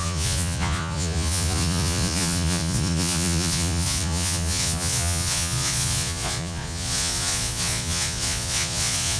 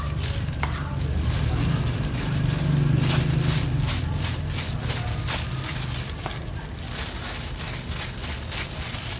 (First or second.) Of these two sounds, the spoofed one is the first